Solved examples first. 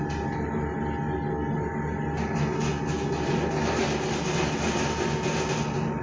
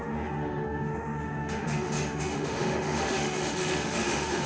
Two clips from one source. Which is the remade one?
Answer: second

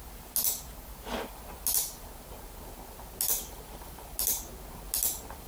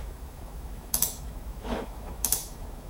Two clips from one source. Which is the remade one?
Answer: second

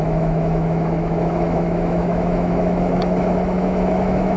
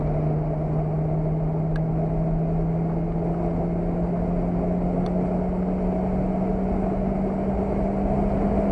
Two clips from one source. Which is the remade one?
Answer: first